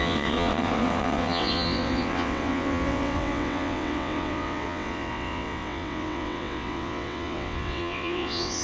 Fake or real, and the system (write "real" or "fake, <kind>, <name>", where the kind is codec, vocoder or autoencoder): fake, vocoder, WaveNeXt